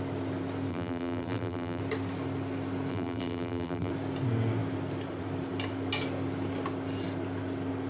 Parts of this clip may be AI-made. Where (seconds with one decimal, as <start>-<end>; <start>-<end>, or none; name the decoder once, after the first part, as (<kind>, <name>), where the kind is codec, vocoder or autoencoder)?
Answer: 0.7-1.8 (vocoder, BigVGAN v2); 2.9-3.9